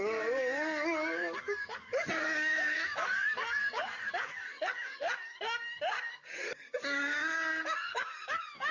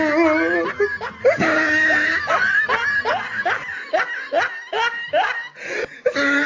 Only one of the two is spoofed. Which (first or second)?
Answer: first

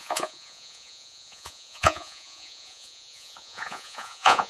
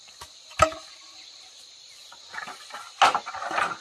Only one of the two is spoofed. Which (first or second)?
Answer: first